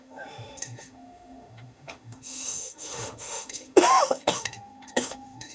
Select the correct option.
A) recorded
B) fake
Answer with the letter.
B